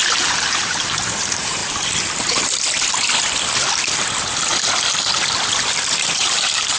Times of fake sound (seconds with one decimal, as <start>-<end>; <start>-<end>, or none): 0.0-1.6; 5.7-6.8